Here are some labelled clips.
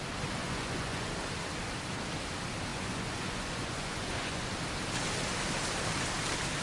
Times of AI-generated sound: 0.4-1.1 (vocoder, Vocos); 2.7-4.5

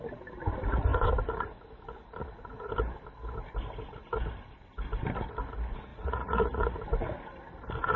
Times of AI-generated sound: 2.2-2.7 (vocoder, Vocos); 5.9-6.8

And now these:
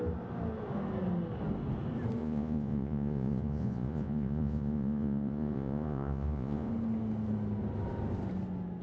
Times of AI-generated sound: 2.2-6.7 (vocoder, Vocos)

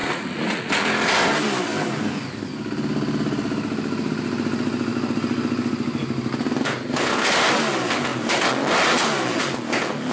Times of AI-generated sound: 0.0-0.7 (vocoder, Vocos)

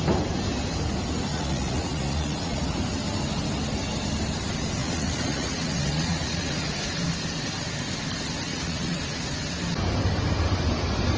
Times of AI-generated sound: 1.3-2.6 (vocoder, Vocos); 4.8-7.0; 8.5-9.0